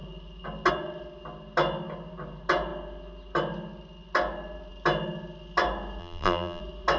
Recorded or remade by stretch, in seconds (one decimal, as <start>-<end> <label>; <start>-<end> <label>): 0.0-6.0 recorded; 6.0-6.6 remade; 6.6-7.0 recorded